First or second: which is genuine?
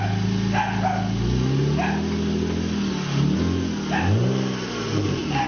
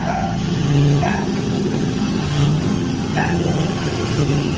first